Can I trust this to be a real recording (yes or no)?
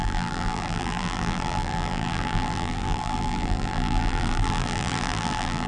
no